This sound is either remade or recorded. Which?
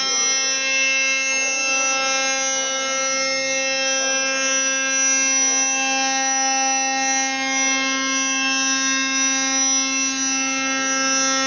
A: recorded